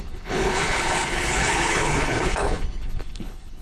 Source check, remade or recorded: remade